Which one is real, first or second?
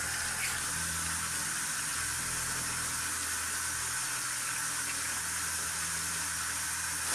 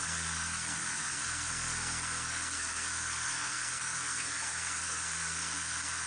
first